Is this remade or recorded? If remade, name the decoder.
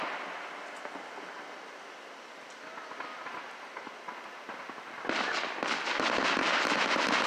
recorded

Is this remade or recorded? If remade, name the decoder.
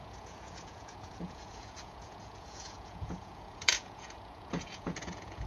remade, vocoder, Vocos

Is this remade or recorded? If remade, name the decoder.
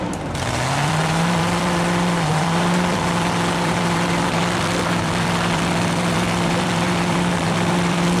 remade, vocoder, BigVGAN v2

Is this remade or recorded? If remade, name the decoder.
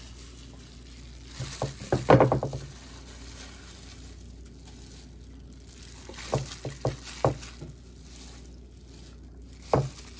recorded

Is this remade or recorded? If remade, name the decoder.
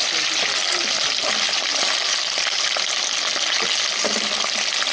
recorded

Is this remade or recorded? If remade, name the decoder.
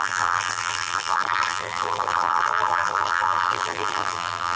remade, vocoder, BigVGAN v2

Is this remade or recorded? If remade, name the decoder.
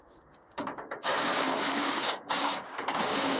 remade, codec, DAC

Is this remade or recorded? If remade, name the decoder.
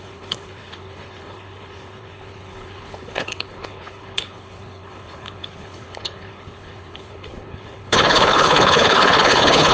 remade, codec, HILCodec